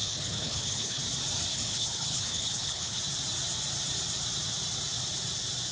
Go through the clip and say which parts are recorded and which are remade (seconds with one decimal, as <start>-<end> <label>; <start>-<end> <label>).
0.0-1.0 remade; 1.0-1.5 recorded; 1.5-3.0 remade; 3.0-5.7 recorded